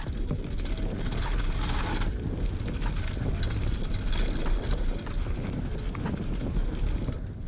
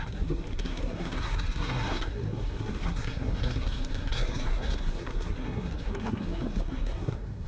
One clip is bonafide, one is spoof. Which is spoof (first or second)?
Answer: second